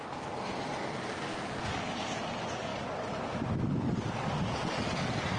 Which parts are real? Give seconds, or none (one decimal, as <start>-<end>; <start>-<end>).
0.0-5.4